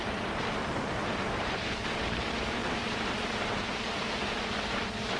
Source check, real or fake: fake